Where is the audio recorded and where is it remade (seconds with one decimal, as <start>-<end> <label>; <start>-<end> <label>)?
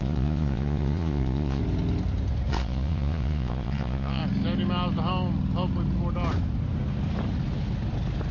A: 0.0-1.6 remade; 1.6-2.5 recorded; 2.5-4.2 remade; 4.2-8.3 recorded